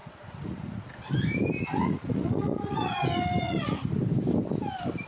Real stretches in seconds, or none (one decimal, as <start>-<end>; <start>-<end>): 1.0-1.7; 3.0-3.4; 4.0-5.1